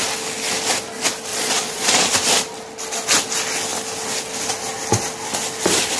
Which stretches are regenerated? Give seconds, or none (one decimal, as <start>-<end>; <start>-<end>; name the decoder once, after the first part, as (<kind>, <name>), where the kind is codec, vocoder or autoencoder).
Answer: 1.3-2.1 (vocoder, Vocos)